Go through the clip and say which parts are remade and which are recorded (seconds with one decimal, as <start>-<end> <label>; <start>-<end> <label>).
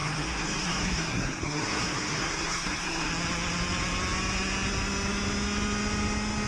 0.0-3.1 remade; 3.1-6.5 recorded